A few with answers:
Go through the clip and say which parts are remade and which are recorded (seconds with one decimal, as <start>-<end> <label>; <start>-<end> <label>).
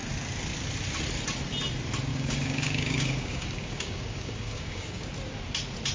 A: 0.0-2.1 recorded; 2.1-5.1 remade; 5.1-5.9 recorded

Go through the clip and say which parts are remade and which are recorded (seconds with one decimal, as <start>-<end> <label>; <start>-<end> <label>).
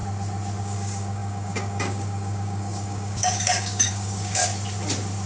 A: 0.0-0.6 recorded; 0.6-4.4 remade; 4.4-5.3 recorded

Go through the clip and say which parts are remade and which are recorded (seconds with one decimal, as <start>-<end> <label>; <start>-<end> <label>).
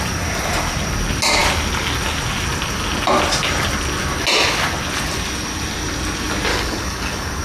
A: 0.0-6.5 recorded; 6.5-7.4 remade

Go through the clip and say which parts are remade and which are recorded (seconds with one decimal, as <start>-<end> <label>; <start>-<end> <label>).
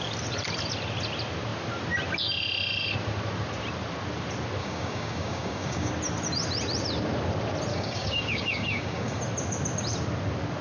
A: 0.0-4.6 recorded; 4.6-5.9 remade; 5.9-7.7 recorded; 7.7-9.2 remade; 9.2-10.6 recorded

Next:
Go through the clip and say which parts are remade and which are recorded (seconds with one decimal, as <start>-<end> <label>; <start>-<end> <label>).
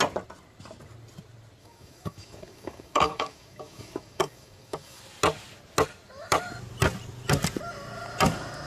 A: 0.0-1.6 recorded; 1.6-5.0 remade; 5.0-8.7 recorded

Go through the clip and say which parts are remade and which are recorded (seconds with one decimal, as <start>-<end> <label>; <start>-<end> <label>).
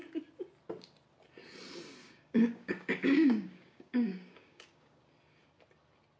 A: 0.0-2.0 recorded; 2.0-5.0 remade; 5.0-6.2 recorded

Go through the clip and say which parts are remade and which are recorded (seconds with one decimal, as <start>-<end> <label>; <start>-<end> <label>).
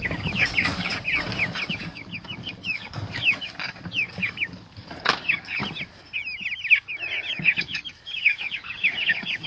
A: 0.0-0.9 remade; 0.9-1.7 recorded; 1.7-5.6 remade; 5.6-7.3 recorded; 7.3-9.5 remade